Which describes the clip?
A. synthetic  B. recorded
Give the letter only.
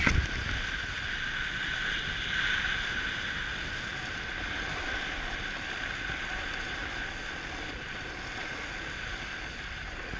B